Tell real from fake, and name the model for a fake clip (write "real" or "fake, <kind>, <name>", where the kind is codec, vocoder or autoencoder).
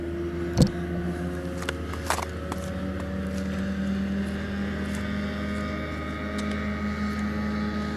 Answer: real